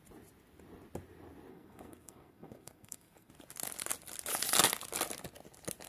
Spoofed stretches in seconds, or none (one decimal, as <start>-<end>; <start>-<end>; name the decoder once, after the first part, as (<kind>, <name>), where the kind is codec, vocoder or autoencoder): 1.5-3.3 (codec, SNAC)